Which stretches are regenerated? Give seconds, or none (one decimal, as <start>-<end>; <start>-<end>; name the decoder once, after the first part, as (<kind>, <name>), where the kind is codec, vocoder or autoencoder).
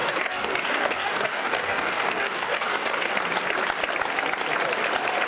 0.0-3.1 (codec, DAC)